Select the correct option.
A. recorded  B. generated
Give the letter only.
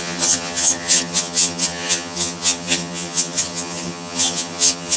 B